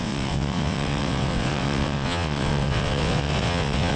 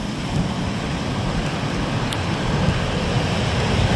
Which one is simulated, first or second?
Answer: first